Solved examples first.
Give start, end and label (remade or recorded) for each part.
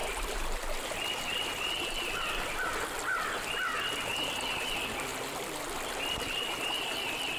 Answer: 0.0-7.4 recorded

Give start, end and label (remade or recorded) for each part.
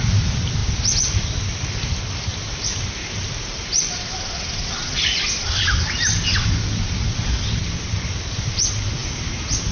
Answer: 0.0-9.7 recorded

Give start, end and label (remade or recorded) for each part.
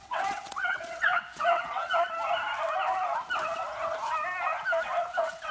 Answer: 0.0-1.8 remade; 1.8-5.1 recorded; 5.1-5.5 remade